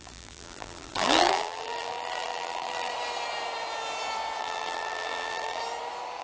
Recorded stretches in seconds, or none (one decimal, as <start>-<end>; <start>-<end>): 2.9-4.4; 5.6-6.2